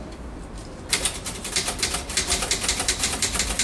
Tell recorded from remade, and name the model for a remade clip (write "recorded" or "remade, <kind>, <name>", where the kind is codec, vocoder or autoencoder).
remade, vocoder, BigVGAN v2